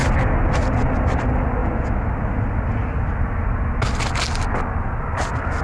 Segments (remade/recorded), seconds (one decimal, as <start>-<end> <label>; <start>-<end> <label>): 0.0-5.6 recorded